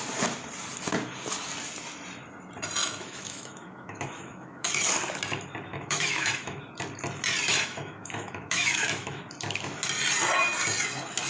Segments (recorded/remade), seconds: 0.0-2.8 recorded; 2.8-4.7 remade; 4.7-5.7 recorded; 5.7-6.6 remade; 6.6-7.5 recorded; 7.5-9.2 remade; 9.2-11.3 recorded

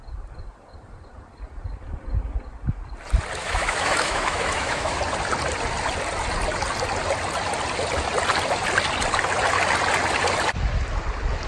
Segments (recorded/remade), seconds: 0.0-3.4 recorded; 3.4-5.0 remade; 5.0-11.5 recorded

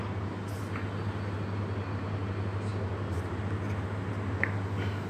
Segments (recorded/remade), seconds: 0.0-5.1 recorded

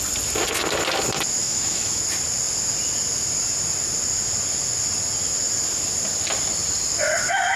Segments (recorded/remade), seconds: 0.0-1.4 recorded; 1.4-2.0 remade; 2.0-7.6 recorded

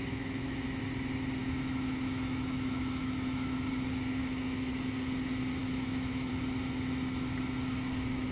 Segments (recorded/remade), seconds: 0.0-0.6 remade; 0.6-1.4 recorded; 1.4-3.7 remade; 3.7-4.2 recorded; 4.2-4.7 remade; 4.7-5.6 recorded; 5.6-6.3 remade; 6.3-8.3 recorded